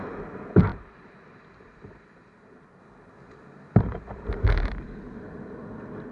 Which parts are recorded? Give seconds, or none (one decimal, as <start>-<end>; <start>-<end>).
0.0-0.7; 2.8-3.9; 5.6-6.1